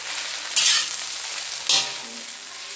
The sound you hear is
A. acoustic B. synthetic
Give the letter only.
A